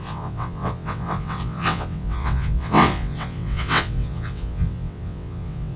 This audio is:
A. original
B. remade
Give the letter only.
B